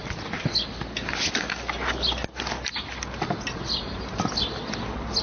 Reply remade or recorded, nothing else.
recorded